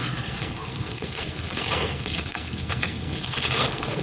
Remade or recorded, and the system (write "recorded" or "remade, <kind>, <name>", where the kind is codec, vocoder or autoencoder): remade, codec, SNAC